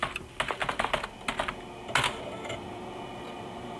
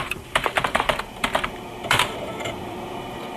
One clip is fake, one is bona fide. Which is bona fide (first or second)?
first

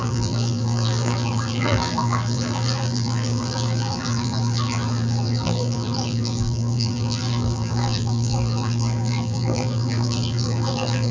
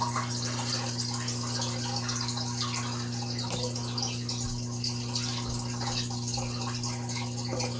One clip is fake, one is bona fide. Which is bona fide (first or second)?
second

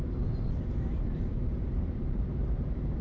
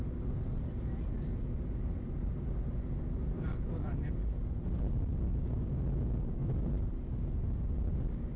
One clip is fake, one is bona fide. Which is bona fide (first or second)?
second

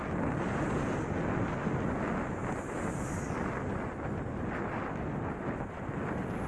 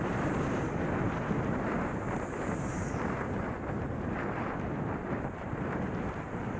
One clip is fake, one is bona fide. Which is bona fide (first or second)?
first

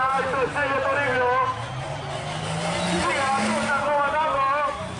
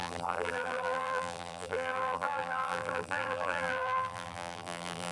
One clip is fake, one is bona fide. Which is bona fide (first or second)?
first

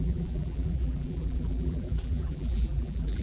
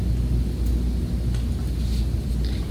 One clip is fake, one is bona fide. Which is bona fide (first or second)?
second